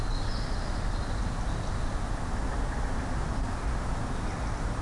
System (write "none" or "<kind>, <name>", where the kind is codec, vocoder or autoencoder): none